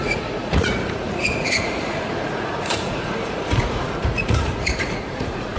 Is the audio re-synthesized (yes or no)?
yes